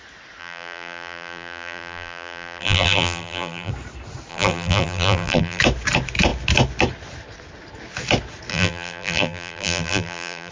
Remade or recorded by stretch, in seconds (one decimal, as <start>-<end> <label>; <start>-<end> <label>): 0.0-0.4 recorded; 0.4-3.7 remade; 3.7-4.3 recorded; 4.3-5.6 remade; 5.6-8.5 recorded; 8.5-10.5 remade